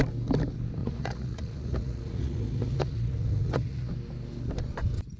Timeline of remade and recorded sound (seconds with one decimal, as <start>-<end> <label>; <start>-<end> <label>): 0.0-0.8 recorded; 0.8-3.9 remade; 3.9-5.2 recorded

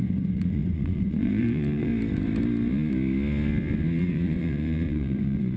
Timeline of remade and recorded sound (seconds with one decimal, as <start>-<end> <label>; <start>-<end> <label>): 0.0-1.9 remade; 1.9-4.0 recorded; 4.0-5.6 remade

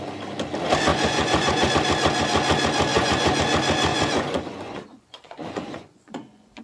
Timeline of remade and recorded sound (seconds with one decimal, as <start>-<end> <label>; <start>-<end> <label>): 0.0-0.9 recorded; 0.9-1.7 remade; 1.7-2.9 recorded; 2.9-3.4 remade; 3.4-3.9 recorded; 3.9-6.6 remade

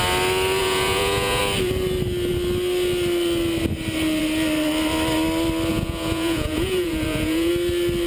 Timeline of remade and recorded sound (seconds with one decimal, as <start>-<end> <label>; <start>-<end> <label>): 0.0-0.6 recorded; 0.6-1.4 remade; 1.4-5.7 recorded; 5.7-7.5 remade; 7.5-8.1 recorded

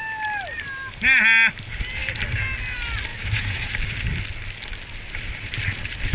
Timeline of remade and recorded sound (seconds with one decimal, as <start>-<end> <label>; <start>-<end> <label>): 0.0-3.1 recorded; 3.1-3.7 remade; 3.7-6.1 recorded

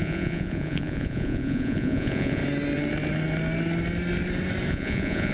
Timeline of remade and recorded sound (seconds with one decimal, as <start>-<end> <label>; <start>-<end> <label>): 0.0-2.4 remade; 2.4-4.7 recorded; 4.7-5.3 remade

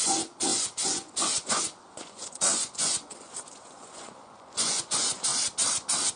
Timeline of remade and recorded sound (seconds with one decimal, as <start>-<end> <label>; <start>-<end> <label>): 0.0-5.3 remade; 5.3-6.2 recorded